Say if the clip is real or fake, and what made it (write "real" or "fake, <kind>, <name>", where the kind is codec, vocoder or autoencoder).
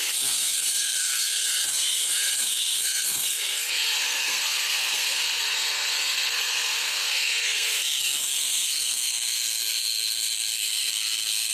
fake, codec, SNAC